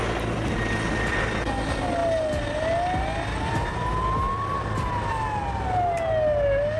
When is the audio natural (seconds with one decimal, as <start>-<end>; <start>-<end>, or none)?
0.0-6.8